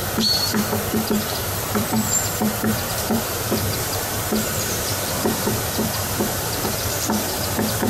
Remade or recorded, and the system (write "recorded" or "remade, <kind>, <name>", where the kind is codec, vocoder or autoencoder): remade, vocoder, BigVGAN v2